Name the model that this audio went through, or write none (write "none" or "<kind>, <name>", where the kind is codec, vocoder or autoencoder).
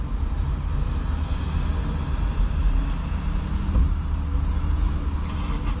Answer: none